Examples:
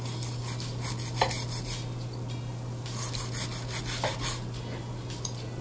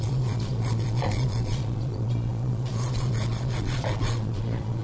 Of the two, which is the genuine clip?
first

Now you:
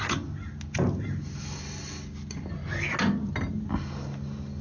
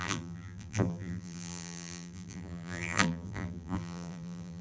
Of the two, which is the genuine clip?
first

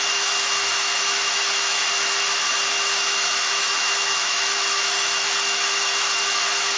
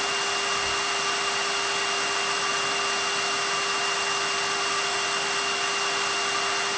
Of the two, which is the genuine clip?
second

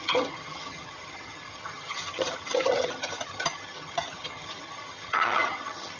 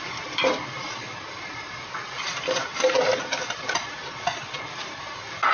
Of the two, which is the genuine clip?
second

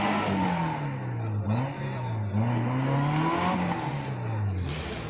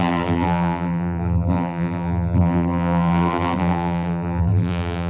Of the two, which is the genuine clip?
first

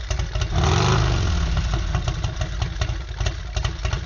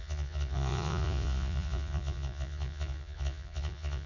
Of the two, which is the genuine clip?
first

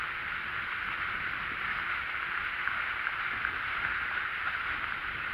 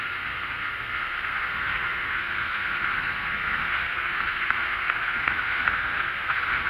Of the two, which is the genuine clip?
first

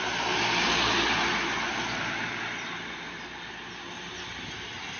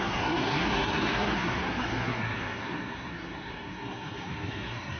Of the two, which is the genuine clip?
first